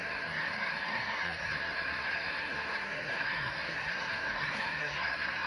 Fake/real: fake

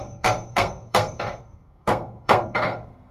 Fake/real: fake